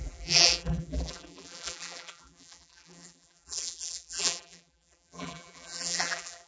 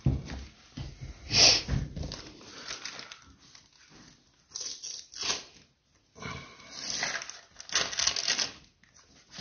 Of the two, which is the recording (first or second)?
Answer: second